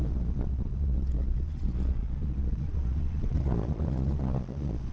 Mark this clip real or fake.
fake